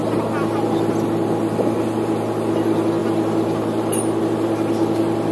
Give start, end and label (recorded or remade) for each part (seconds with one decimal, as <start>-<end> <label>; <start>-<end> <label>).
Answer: 0.0-5.3 recorded